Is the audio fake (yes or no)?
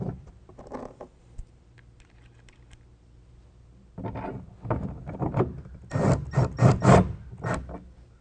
no